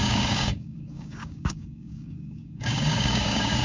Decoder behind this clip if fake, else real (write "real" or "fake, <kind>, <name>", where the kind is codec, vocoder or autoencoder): fake, codec, DAC